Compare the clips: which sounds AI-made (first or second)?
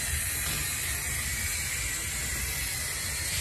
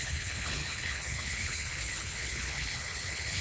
second